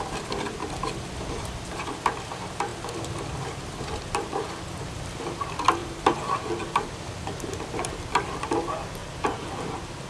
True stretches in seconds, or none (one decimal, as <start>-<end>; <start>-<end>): 0.0-5.8; 6.5-10.1